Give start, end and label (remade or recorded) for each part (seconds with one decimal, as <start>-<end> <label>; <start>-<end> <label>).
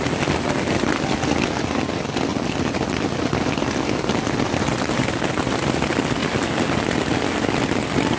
0.0-8.2 recorded